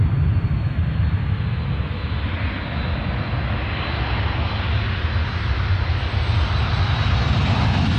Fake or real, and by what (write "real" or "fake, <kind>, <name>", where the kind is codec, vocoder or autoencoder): real